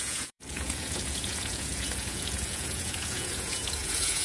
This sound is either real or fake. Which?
fake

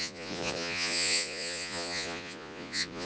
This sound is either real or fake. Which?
fake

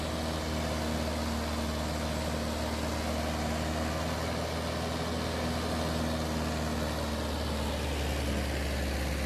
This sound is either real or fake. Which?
real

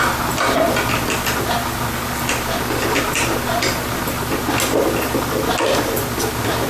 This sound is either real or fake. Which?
real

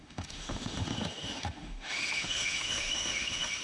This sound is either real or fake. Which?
fake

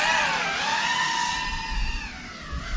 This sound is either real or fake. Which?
real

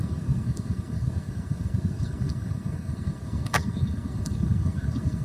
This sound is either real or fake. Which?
fake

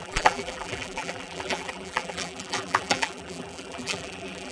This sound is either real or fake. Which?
fake